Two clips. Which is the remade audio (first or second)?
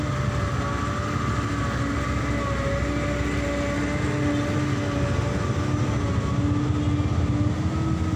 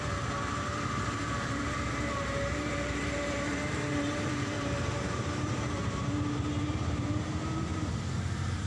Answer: second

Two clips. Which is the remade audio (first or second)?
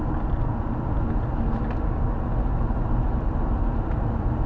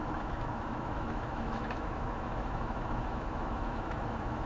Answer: second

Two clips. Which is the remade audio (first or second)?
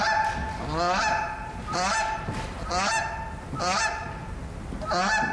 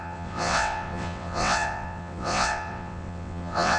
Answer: second